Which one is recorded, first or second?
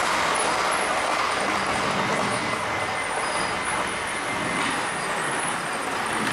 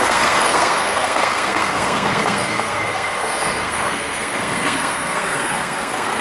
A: first